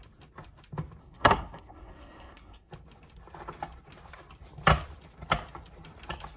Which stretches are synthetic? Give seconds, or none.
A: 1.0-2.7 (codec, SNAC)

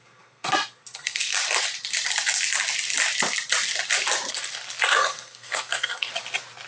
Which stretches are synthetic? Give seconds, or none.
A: 0.0-1.4 (codec, SNAC); 4.9-6.1

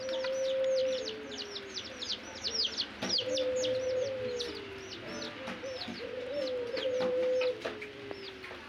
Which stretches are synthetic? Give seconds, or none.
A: none

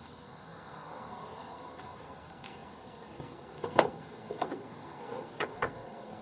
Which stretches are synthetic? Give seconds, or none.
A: 0.0-6.2 (codec, SNAC)

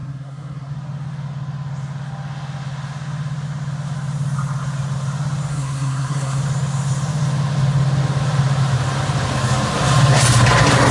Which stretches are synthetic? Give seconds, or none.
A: 0.0-0.7 (codec, SNAC); 5.5-6.4

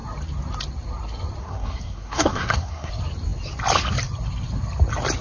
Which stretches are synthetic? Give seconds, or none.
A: 1.4-2.9 (codec, SNAC)

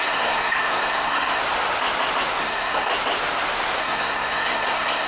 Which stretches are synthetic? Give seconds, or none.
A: 0.0-1.4 (codec, SNAC); 2.4-2.9; 3.8-5.1

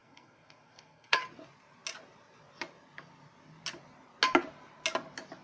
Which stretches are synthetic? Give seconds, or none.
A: 0.0-1.2 (codec, SNAC)